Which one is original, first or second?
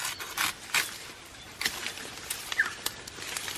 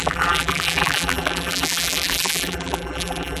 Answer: first